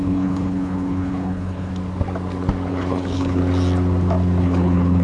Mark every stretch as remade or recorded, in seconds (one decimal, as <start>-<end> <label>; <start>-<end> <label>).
0.0-1.7 remade; 1.7-2.7 recorded; 2.7-3.4 remade; 3.4-4.4 recorded; 4.4-5.0 remade